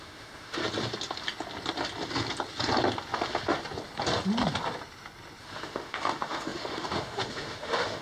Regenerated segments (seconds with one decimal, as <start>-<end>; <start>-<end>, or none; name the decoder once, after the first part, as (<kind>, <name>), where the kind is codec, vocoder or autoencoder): 0.0-0.6 (autoencoder, DAC-VAE); 5.4-8.0